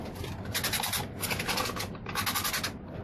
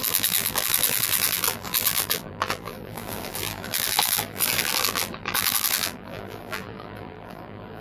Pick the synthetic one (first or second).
second